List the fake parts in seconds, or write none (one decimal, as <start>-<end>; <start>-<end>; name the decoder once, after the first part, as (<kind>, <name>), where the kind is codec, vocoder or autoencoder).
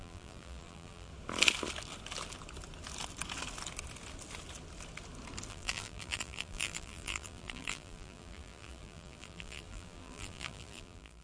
0.0-1.1 (vocoder, BigVGAN v2); 5.5-11.2